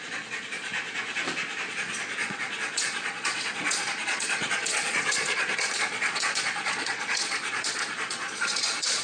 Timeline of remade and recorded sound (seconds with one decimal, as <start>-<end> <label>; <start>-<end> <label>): 0.0-0.7 remade; 0.7-1.7 recorded; 1.7-9.0 remade